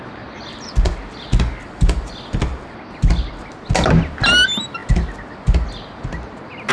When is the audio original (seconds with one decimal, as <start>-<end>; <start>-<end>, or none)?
0.0-6.7